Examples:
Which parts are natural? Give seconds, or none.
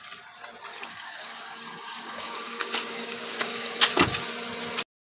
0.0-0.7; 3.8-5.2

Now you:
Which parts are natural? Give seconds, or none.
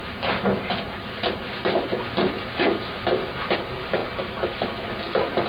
0.0-4.0; 4.6-5.5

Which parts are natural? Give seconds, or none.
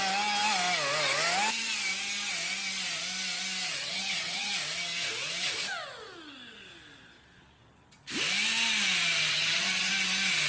0.0-3.8; 4.5-9.3; 9.9-10.5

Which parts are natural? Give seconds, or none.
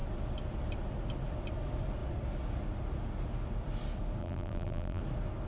0.0-4.2; 5.0-5.5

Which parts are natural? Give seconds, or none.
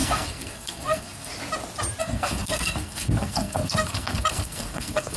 1.3-2.0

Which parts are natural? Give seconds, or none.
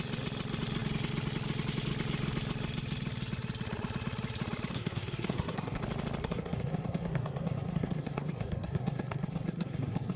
0.0-4.7; 5.8-6.2